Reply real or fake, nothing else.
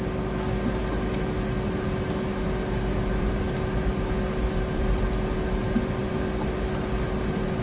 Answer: fake